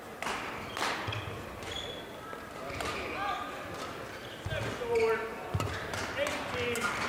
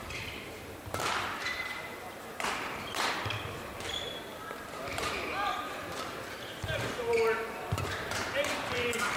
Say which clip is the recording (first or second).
first